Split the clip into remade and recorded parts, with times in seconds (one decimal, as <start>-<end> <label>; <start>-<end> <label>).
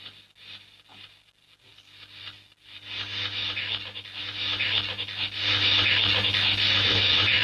0.0-7.4 recorded